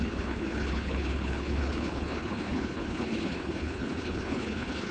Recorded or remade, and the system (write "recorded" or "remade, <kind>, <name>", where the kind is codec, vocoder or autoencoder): remade, codec, HILCodec